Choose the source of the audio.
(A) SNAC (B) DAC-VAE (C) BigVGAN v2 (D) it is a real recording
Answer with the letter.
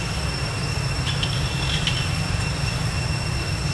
D